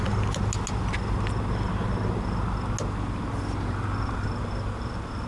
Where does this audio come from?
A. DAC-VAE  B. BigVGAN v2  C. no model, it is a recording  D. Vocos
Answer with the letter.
C